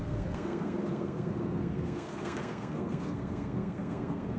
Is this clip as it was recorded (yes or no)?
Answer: no